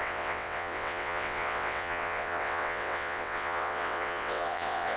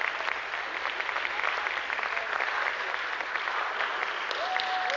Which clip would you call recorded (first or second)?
second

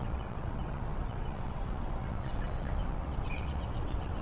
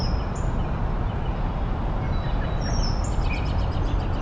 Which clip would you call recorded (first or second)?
second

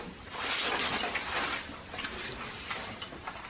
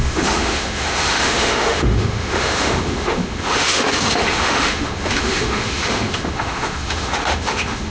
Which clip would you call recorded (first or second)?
first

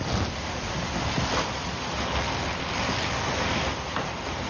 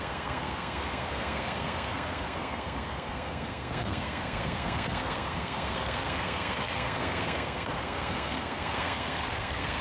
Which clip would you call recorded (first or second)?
first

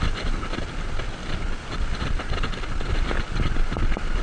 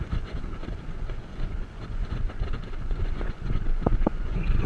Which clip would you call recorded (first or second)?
first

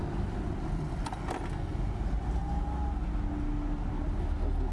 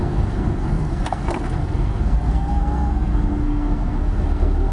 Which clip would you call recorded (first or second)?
first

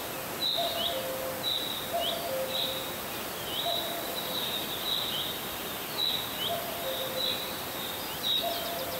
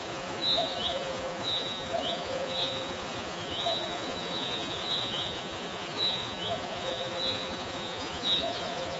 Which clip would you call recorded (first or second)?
first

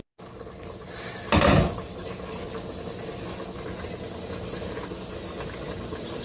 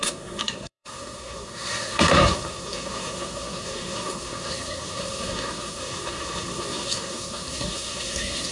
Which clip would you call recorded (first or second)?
first